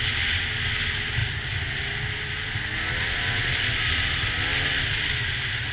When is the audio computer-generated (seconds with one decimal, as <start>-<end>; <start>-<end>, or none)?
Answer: 1.2-1.8